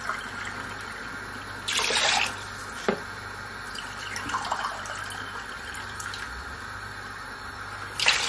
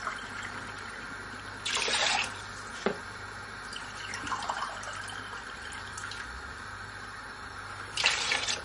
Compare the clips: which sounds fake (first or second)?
second